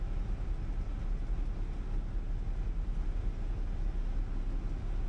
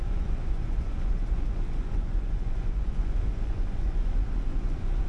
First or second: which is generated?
second